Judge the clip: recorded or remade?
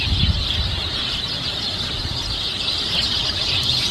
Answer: recorded